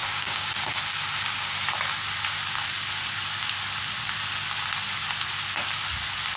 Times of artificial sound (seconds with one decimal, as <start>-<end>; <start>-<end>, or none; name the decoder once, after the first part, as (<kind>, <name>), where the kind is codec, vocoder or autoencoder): 0.0-0.7 (codec, DAC)